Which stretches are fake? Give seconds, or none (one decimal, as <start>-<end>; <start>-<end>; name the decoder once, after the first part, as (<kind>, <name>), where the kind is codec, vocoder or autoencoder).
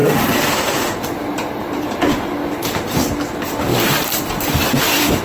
0.0-3.1 (vocoder, BigVGAN v2); 3.7-5.2